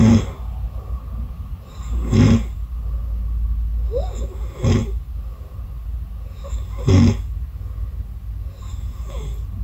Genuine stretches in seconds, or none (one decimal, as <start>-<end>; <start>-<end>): 0.0-9.6